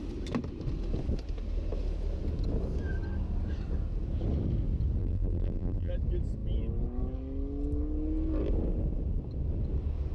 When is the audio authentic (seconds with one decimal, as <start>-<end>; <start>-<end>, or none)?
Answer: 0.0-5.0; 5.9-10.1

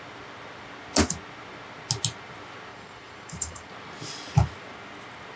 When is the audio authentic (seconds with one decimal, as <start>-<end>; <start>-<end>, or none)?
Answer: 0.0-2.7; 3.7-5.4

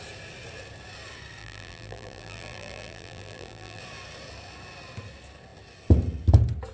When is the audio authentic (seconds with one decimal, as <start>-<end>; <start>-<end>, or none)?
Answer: 0.0-1.4; 3.8-6.7

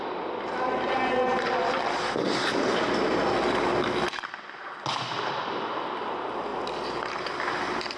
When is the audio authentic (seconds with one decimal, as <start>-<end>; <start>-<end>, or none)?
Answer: 0.0-8.0

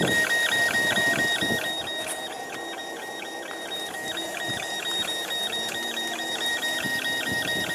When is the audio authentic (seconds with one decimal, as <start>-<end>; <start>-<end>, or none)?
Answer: 0.0-2.8; 6.8-7.7